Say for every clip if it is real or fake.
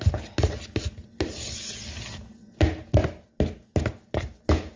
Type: real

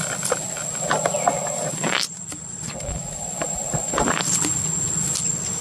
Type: real